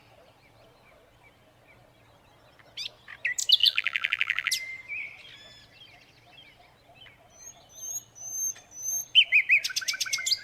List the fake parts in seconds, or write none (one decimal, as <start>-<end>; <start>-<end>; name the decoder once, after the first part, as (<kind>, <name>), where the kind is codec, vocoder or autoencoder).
3.6-4.5 (vocoder, BigVGAN v2)

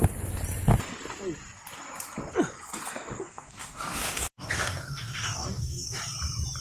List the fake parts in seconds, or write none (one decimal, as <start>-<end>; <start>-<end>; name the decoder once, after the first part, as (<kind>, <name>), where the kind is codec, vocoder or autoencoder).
3.2-6.0 (codec, DAC)

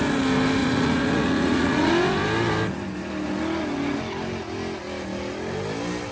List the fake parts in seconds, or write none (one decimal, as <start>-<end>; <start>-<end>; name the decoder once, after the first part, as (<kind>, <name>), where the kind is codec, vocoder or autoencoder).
0.6-1.9 (vocoder, Vocos)

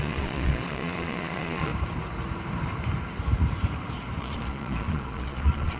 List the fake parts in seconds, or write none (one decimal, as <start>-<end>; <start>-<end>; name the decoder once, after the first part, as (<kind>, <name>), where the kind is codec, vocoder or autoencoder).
0.0-1.7 (vocoder, Vocos); 4.2-5.8

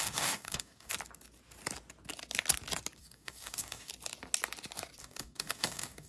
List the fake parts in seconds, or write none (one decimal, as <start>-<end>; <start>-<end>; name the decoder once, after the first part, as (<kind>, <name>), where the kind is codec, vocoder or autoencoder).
0.0-0.9 (codec, DAC); 3.0-3.9; 5.0-6.1

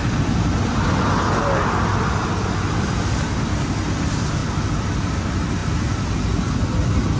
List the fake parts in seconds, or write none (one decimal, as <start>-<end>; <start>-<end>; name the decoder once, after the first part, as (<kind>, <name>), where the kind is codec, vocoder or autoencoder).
none

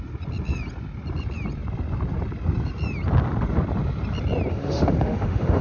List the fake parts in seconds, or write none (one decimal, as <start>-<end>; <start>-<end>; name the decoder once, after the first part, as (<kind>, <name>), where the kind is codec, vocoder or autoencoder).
4.5-5.6 (autoencoder, DAC-VAE)